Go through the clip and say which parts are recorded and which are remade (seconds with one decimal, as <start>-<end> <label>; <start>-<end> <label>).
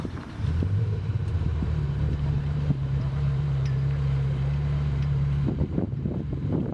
0.0-6.7 remade